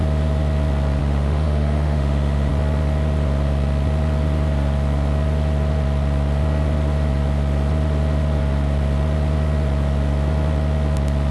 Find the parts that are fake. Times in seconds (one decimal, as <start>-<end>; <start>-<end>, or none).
1.0-2.5

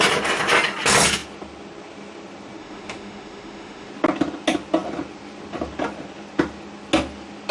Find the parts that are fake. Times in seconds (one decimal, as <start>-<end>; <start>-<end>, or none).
2.6-3.9

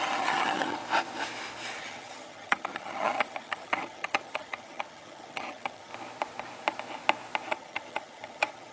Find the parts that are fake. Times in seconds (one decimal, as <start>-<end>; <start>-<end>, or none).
0.0-0.8; 1.8-5.9; 7.5-8.7

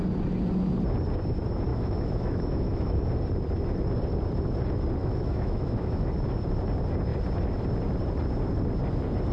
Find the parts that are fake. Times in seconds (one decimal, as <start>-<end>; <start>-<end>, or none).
1.7-3.1; 5.0-6.1

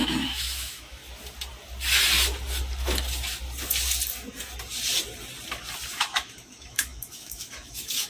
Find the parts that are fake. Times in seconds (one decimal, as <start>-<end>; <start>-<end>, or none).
0.0-1.0; 5.9-8.1